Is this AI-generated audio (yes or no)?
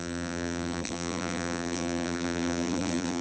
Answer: yes